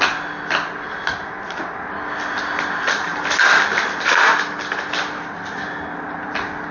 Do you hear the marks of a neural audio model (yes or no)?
no